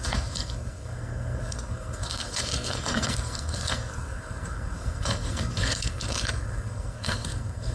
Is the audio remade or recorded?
remade